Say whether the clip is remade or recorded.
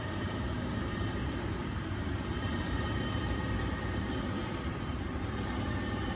remade